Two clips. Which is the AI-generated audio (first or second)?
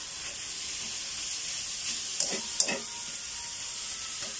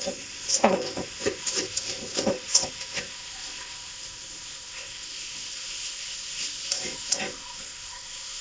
second